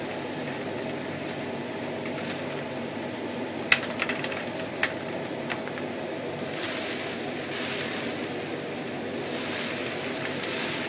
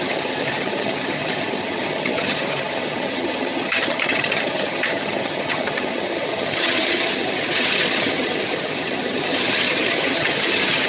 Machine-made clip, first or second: second